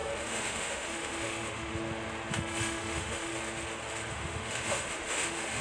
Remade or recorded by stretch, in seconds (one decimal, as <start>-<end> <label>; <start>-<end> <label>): 0.0-1.7 remade; 1.7-2.3 recorded; 2.3-3.3 remade; 3.3-4.1 recorded; 4.1-5.6 remade